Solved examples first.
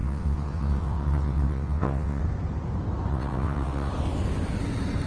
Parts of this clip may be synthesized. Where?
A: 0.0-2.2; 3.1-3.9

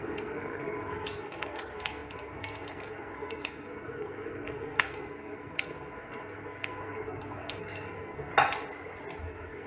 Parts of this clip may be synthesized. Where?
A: 0.0-8.3; 9.2-9.7

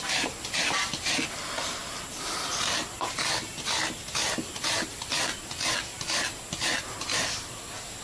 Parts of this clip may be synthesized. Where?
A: none

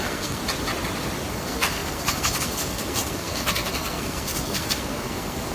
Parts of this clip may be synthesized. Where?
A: 0.0-0.4; 1.3-5.5

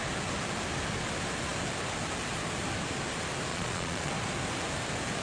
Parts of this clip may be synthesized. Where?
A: 3.5-4.1